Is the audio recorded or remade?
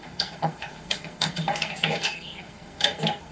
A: remade